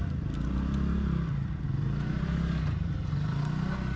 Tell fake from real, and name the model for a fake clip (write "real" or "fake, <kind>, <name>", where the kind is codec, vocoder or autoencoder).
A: real